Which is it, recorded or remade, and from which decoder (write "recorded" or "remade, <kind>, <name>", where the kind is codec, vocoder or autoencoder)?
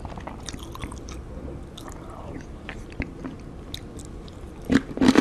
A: recorded